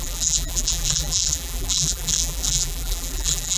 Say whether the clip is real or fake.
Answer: fake